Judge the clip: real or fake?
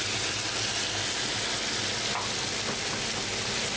real